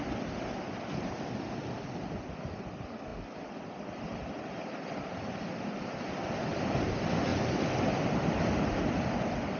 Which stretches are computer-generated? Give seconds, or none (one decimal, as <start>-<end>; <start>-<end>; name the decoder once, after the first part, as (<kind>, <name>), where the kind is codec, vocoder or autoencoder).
none